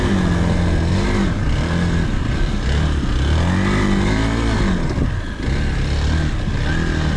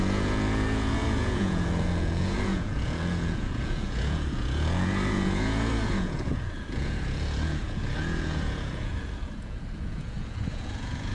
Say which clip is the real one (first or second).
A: first